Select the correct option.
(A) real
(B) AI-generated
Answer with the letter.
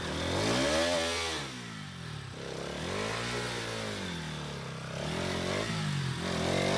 A